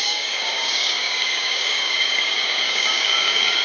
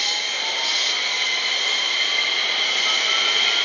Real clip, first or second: second